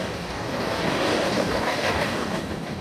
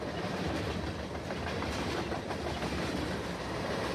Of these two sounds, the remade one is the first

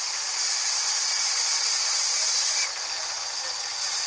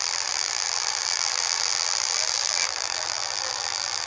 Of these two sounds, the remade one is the second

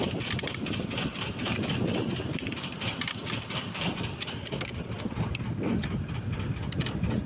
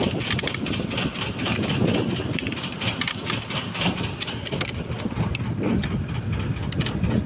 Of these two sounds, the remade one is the first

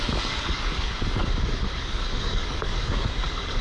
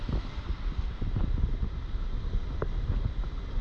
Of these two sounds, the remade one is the first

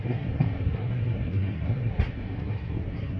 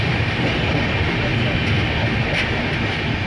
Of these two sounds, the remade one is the first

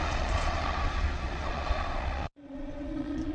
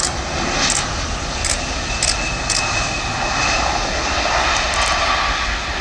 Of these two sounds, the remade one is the first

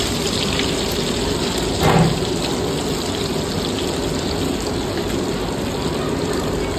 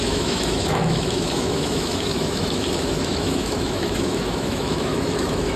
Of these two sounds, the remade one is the second